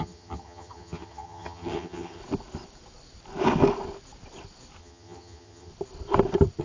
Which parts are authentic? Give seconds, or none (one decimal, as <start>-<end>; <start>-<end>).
2.2-4.8; 5.7-6.6